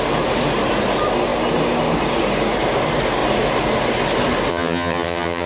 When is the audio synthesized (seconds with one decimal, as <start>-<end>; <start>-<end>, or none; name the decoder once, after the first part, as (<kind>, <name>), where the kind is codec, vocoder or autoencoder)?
4.5-5.5 (vocoder, HiFi-GAN)